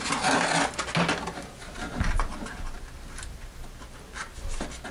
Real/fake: real